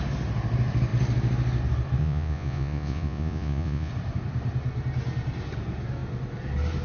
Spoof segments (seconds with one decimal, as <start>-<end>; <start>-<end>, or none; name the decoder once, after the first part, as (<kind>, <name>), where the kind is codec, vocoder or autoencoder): 2.0-3.9 (vocoder, Vocos)